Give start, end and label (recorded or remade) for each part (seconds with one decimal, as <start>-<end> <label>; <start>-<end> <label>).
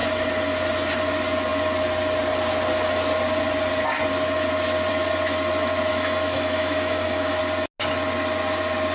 0.0-5.9 recorded; 5.9-7.4 remade; 7.4-8.9 recorded